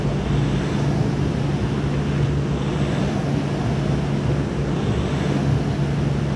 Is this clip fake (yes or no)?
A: no